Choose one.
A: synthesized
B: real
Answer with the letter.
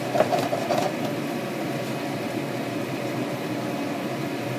B